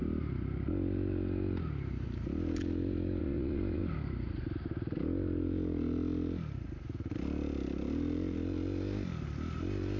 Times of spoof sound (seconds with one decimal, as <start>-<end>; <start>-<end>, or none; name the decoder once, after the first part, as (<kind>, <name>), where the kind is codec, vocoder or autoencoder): 3.2-3.8 (vocoder, Vocos)